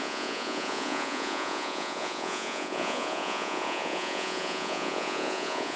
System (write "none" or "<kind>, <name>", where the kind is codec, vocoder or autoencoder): vocoder, Vocos